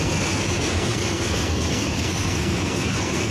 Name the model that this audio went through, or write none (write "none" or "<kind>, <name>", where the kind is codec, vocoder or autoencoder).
codec, SNAC